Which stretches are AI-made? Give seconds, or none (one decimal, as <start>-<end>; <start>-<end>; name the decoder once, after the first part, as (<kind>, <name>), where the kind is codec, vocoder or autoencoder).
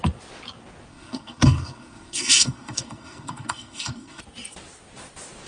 0.9-4.2 (codec, SNAC)